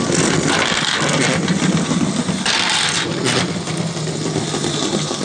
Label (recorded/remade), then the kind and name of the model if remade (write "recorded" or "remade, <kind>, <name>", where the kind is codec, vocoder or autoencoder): recorded